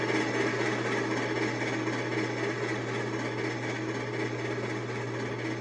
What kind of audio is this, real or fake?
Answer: real